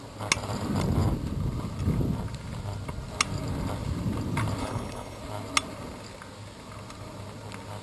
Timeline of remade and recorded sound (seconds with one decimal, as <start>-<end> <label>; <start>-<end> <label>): 0.0-4.6 recorded; 4.6-5.2 remade; 5.2-7.8 recorded